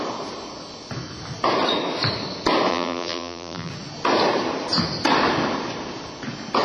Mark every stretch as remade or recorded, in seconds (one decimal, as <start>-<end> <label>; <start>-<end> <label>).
0.0-2.7 recorded; 2.7-3.7 remade; 3.7-6.6 recorded